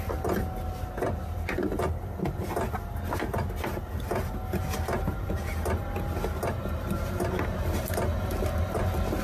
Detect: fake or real real